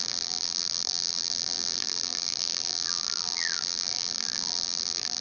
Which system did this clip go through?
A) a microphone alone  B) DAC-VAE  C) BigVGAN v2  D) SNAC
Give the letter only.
C